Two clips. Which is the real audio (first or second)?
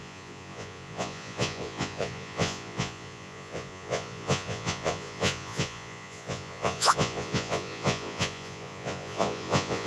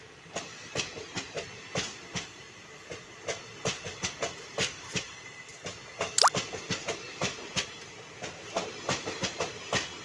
second